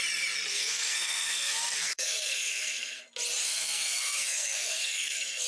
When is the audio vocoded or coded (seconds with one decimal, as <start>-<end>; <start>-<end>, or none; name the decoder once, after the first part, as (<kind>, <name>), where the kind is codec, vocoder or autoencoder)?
0.5-3.0 (codec, SNAC); 3.4-5.5